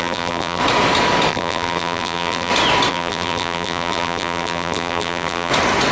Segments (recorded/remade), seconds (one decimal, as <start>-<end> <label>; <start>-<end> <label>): 0.0-0.6 remade; 0.6-1.3 recorded; 1.3-2.5 remade; 2.5-2.9 recorded; 2.9-5.5 remade; 5.5-5.9 recorded